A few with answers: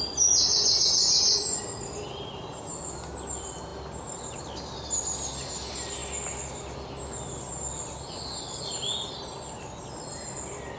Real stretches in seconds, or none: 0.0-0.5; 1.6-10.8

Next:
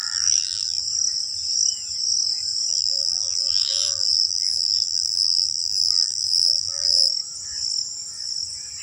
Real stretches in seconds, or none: 0.8-2.7; 7.1-8.8